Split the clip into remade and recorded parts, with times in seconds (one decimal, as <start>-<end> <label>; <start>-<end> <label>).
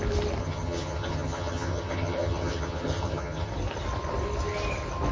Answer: 0.0-0.4 recorded; 0.4-3.5 remade; 3.5-5.1 recorded